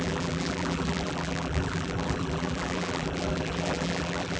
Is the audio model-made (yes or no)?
yes